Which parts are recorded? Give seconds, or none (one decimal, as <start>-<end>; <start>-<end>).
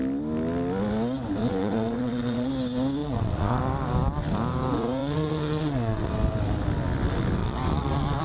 0.0-1.4; 2.5-3.0; 3.6-5.0; 6.1-7.4